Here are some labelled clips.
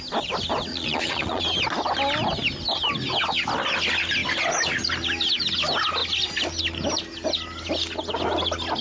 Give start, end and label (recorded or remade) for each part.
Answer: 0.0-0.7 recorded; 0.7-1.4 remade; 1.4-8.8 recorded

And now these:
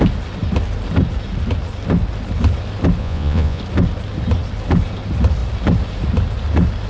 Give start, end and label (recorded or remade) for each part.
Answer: 0.0-3.0 recorded; 3.0-3.6 remade; 3.6-6.9 recorded